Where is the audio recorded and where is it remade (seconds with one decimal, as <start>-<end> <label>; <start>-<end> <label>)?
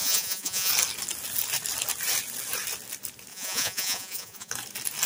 0.0-0.7 remade; 0.7-3.3 recorded; 3.3-4.5 remade; 4.5-5.1 recorded